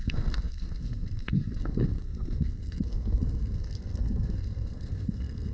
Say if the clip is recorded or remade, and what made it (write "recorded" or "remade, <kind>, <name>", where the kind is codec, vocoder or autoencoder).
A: remade, codec, SNAC